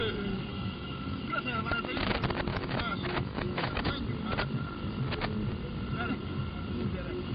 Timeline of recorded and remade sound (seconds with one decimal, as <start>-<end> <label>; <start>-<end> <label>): 0.0-0.5 recorded; 0.5-1.7 remade; 1.7-2.5 recorded; 2.5-3.9 remade; 3.9-7.3 recorded

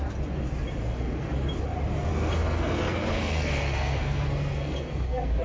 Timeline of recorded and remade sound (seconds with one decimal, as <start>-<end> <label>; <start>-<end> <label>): 0.0-0.8 recorded; 0.8-1.3 remade; 1.3-2.1 recorded; 2.1-5.4 remade

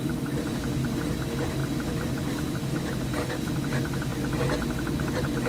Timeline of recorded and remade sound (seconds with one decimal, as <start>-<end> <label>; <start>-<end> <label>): 0.0-5.5 recorded

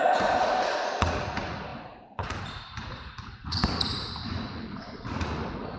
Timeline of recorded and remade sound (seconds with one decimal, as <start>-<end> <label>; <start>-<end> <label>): 0.0-5.8 remade

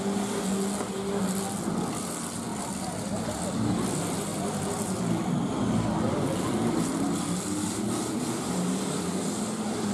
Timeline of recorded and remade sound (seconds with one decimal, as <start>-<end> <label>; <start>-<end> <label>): 0.0-4.3 recorded; 4.3-9.4 remade; 9.4-9.9 recorded

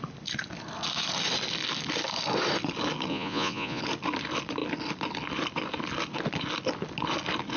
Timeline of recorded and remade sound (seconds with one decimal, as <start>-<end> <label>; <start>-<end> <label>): 0.0-3.1 recorded; 3.1-3.8 remade; 3.8-7.6 recorded

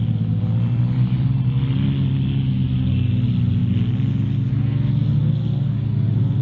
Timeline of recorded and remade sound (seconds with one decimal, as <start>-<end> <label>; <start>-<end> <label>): 0.0-6.4 recorded

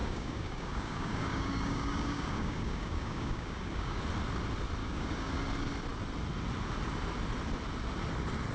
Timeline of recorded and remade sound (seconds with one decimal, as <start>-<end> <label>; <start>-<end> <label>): 0.0-4.0 remade; 4.0-4.8 recorded; 4.8-5.3 remade; 5.3-8.5 recorded